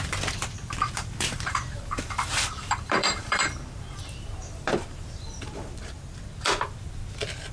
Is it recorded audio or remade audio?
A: remade